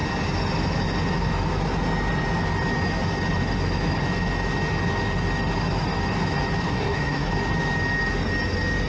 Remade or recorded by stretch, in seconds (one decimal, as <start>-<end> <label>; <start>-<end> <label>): 0.0-6.7 recorded; 6.7-7.3 remade; 7.3-8.9 recorded